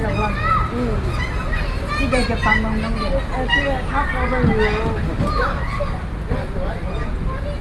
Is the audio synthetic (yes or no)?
no